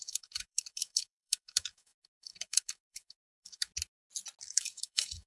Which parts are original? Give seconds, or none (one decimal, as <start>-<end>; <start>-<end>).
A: 3.7-4.4